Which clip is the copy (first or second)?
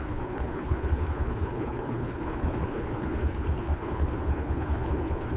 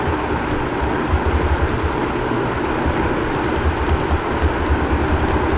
first